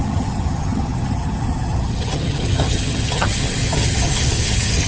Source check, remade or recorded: remade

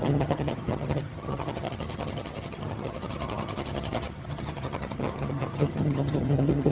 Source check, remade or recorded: remade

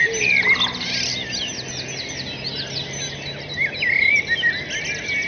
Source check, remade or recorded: recorded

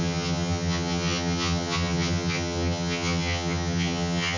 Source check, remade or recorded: remade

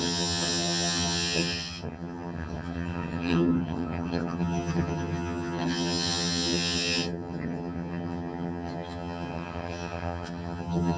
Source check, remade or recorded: remade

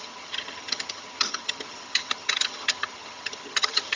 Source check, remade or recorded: remade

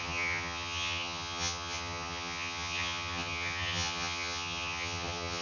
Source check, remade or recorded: remade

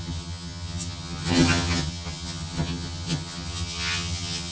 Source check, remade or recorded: remade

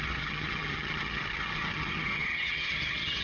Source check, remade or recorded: remade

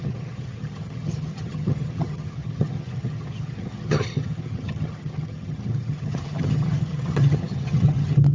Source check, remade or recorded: remade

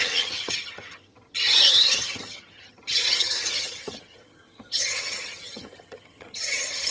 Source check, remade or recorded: remade